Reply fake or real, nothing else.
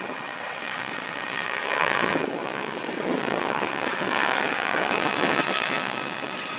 fake